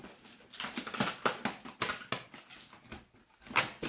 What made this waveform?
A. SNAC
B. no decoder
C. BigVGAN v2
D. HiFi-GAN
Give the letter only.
B